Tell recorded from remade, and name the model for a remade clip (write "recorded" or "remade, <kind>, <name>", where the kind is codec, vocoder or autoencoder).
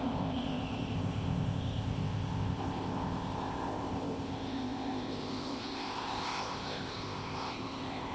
remade, codec, ZipCodec